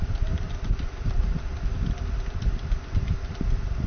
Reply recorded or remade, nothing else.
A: recorded